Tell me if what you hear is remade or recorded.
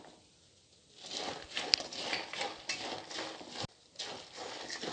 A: recorded